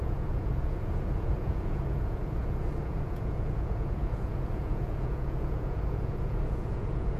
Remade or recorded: remade